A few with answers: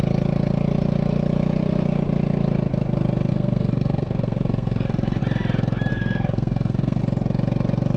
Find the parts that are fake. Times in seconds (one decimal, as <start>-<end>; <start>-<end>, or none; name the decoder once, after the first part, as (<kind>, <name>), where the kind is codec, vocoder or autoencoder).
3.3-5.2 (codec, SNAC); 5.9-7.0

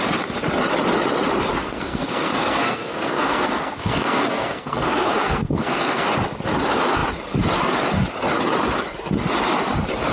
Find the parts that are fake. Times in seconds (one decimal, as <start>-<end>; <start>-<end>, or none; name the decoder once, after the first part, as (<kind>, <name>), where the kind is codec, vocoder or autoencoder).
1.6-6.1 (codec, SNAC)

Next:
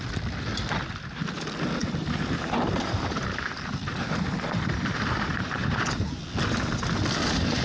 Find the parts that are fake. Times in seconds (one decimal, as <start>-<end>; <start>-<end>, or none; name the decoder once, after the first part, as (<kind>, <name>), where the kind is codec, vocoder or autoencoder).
1.8-6.2 (vocoder, BigVGAN v2)